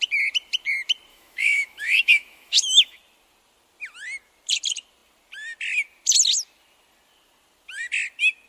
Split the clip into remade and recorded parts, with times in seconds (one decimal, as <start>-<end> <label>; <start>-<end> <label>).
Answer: 0.0-1.1 recorded; 1.1-3.0 remade; 3.0-8.5 recorded